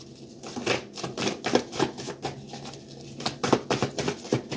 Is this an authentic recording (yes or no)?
yes